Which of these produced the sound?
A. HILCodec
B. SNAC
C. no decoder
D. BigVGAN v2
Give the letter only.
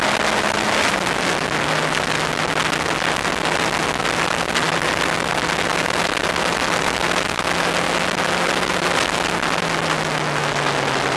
C